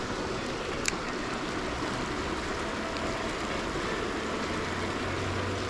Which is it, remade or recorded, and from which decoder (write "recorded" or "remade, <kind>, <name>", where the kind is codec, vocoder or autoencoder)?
recorded